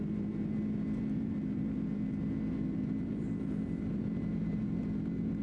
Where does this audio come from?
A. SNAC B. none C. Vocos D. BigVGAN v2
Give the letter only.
D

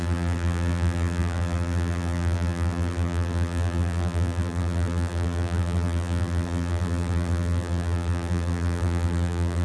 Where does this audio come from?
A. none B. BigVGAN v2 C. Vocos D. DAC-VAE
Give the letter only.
B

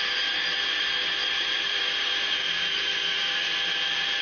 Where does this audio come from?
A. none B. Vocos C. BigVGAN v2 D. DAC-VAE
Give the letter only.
C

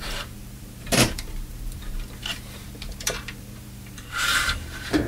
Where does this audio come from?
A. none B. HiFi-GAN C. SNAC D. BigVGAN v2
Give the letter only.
D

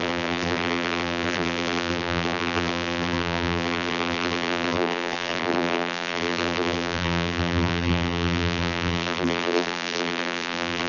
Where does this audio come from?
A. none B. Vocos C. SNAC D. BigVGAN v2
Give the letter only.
D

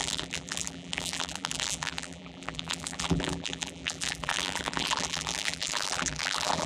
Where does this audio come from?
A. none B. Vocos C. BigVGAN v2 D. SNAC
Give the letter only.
C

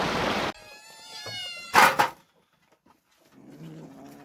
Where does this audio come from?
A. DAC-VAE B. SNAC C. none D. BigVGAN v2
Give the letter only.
C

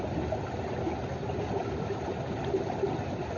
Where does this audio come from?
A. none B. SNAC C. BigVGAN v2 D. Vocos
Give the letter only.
A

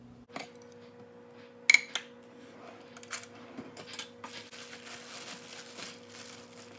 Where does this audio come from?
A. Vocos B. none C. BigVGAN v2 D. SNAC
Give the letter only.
B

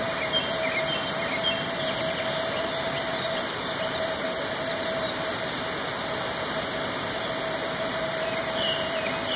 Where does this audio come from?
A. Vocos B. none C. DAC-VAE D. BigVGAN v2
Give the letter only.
B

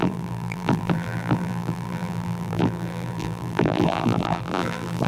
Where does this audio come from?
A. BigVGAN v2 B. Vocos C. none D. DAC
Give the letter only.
A